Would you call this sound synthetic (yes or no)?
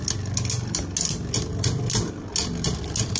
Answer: no